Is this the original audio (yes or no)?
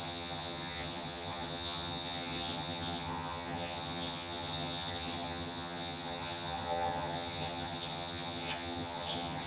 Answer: no